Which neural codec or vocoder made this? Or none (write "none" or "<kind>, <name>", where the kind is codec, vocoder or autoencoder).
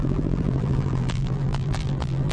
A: vocoder, BigVGAN v2